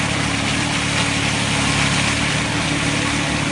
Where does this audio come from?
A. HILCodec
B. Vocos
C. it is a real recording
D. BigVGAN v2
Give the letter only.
C